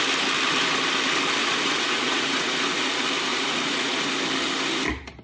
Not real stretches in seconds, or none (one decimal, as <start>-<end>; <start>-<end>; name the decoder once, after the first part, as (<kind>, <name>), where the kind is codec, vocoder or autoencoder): 1.4-2.8 (vocoder, Vocos); 3.3-4.1